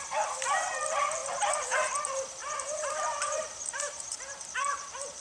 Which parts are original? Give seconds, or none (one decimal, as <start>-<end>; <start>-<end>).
0.0-1.2; 1.9-2.4